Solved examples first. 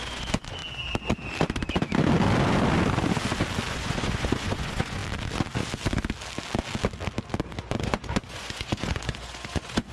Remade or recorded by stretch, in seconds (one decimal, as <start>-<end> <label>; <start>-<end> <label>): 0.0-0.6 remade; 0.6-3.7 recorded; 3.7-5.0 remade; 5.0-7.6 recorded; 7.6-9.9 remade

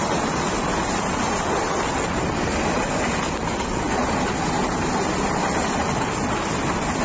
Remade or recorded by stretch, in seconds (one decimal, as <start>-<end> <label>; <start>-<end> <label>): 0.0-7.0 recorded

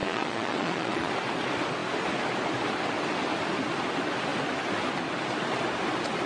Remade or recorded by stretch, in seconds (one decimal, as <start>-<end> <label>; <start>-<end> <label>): 0.0-1.1 remade; 1.1-6.3 recorded

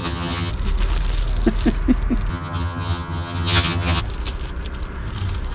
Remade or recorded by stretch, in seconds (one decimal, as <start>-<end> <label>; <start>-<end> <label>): 0.0-0.5 remade; 0.5-2.3 recorded; 2.3-4.0 remade; 4.0-5.5 recorded

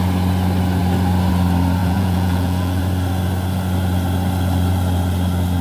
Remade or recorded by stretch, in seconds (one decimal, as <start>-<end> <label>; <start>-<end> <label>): 0.0-1.8 recorded; 1.8-2.8 remade; 2.8-5.6 recorded